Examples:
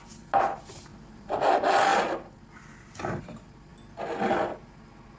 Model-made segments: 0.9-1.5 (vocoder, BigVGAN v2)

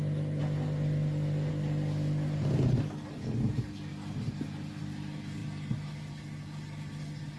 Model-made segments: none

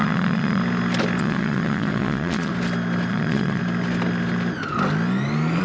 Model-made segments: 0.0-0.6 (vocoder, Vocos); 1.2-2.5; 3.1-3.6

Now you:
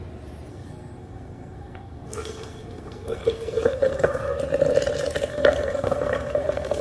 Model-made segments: 0.5-4.4 (codec, SNAC); 5.3-6.8

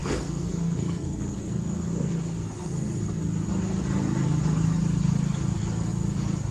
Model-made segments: 0.0-2.9 (codec, SNAC)